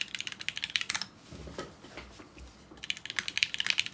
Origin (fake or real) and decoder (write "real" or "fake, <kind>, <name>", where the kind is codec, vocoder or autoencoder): real